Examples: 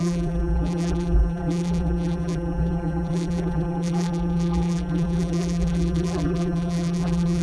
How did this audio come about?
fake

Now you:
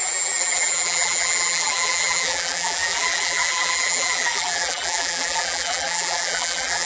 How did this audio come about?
fake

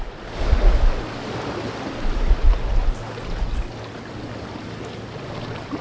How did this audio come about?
real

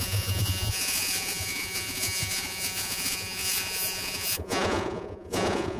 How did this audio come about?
fake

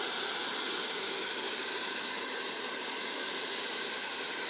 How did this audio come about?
real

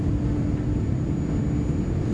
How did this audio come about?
real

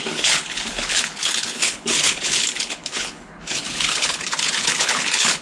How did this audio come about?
fake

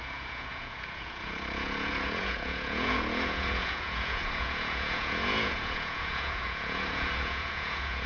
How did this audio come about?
fake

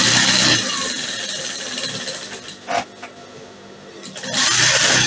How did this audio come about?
real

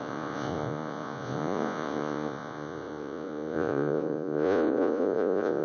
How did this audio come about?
fake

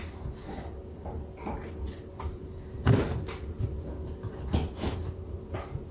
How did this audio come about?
real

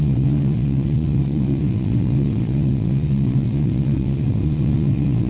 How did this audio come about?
fake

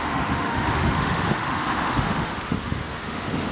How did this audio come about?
fake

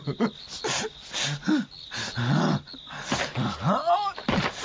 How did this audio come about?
real